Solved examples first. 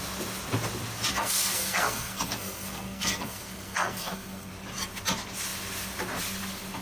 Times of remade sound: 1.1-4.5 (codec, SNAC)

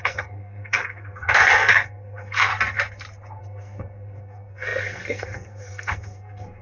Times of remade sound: 0.0-2.5 (codec, SNAC); 3.4-6.6

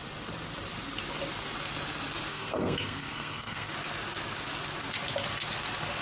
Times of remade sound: 2.3-3.7 (codec, SNAC)

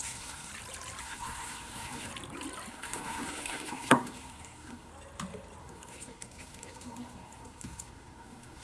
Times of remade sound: 0.0-0.5 (codec, SNAC); 1.0-2.1; 2.7-4.9; 5.6-8.6

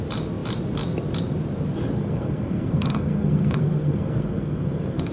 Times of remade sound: 2.0-5.1 (codec, SNAC)

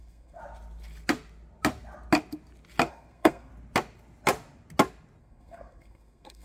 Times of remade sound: 0.0-0.4 (codec, SNAC); 2.9-3.5; 5.2-6.4

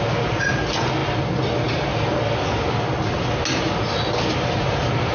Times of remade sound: none

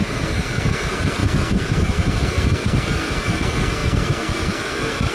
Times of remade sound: 0.0-5.1 (codec, SNAC)